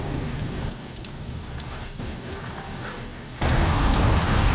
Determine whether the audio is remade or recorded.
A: remade